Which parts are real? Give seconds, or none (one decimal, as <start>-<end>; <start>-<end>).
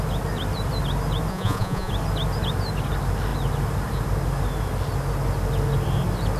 0.0-1.3; 1.9-6.4